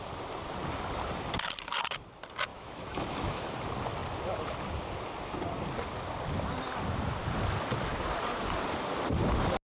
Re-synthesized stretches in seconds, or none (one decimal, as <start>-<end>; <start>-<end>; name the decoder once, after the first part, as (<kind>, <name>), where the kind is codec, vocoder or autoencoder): 2.5-3.5 (autoencoder, DAC-VAE)